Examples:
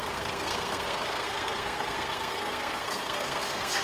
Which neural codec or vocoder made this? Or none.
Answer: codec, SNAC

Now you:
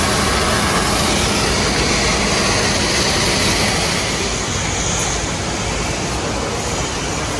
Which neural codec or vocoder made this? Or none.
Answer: none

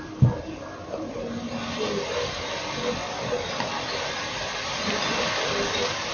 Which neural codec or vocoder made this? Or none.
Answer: none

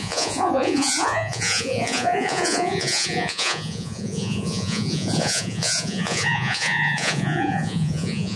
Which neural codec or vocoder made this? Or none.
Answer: vocoder, Vocos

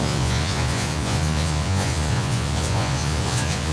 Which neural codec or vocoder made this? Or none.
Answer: vocoder, Vocos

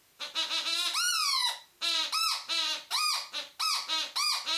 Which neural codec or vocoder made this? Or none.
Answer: none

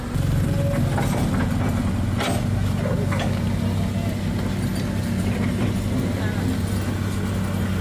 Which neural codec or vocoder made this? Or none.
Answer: none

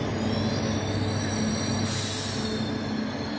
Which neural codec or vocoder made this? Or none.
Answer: none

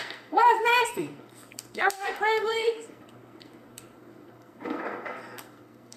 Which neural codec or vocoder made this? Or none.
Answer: codec, SNAC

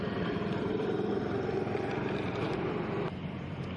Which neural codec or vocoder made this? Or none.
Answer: vocoder, BigVGAN v2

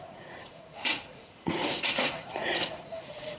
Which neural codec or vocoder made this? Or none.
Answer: vocoder, Vocos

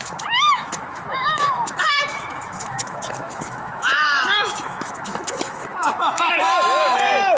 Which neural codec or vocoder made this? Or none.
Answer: autoencoder, DAC-VAE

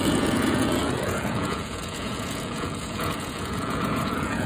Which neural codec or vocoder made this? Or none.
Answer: vocoder, Vocos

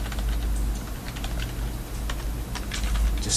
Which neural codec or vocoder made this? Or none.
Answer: none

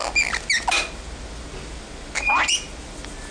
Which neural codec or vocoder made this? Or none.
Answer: none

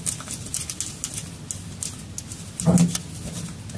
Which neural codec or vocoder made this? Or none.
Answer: none